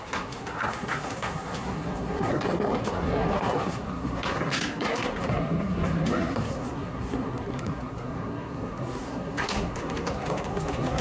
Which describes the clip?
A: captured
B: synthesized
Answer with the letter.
B